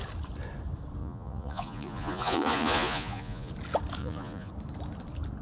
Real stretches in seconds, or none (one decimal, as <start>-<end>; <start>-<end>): 0.0-1.0; 3.5-4.0; 4.5-5.4